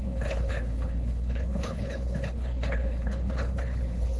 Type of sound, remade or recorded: remade